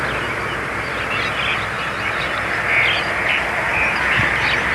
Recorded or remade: recorded